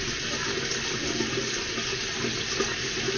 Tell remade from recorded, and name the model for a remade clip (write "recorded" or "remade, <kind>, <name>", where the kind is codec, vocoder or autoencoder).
recorded